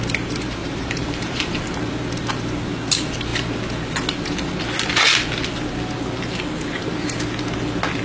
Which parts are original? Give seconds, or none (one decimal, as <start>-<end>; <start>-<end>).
0.0-0.6; 1.5-8.0

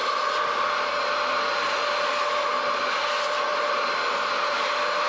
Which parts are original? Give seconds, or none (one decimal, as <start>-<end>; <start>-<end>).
0.0-5.1

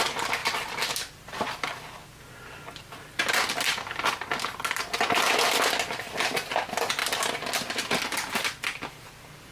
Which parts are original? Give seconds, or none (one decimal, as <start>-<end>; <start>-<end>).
0.0-0.4; 1.8-9.5

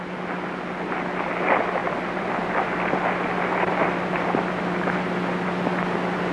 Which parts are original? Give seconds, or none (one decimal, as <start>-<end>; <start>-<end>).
0.0-6.3

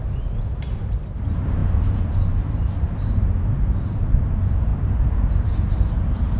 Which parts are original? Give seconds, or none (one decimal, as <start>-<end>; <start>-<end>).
none

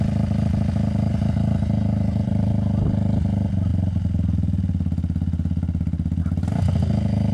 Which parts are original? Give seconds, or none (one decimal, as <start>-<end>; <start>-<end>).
0.0-1.1; 2.5-7.3